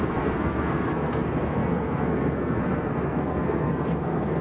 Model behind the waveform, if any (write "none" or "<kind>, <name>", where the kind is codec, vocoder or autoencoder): codec, SNAC